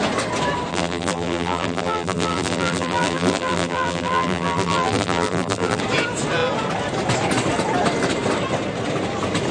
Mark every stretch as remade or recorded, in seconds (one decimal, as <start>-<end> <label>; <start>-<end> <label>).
0.0-0.7 recorded; 0.7-5.8 remade; 5.8-9.5 recorded